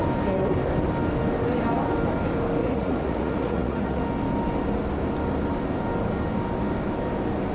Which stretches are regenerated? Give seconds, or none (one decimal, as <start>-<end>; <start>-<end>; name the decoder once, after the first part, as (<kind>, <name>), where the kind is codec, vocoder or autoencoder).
2.6-4.0 (vocoder, Vocos)